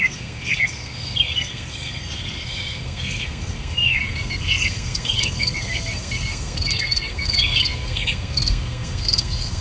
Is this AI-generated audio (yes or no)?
yes